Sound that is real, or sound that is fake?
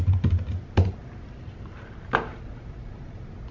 real